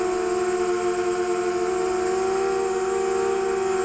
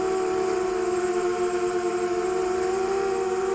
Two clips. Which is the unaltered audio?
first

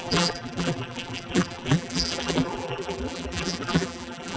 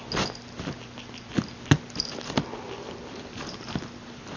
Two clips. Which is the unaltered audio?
second